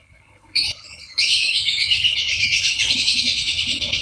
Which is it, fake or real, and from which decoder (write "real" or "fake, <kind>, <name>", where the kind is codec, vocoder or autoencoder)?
fake, codec, HILCodec